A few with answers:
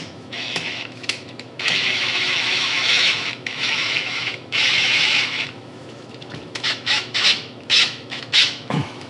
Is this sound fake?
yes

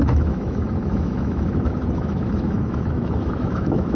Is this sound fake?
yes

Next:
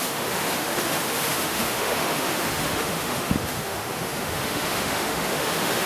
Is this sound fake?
yes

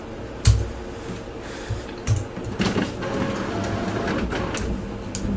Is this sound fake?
no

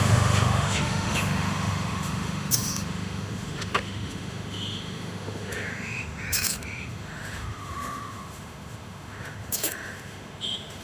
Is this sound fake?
yes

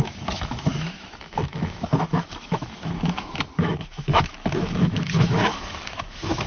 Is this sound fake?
yes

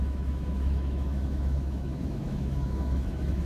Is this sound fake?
yes